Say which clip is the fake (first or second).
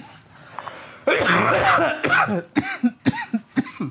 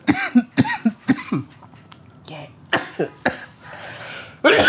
second